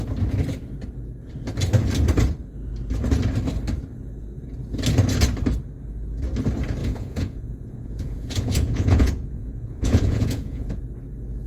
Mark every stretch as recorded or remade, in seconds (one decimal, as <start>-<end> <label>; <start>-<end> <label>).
0.0-6.8 recorded; 6.8-10.8 remade; 10.8-11.5 recorded